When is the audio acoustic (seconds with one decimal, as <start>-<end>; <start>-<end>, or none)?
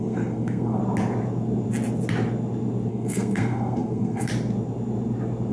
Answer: 0.8-2.9; 4.3-5.5